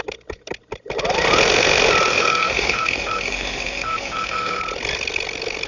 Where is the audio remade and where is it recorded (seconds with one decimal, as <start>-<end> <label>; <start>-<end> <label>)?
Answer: 0.0-2.1 recorded; 2.1-4.6 remade; 4.6-5.7 recorded